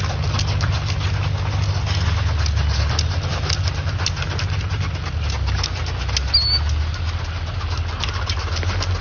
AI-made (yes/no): no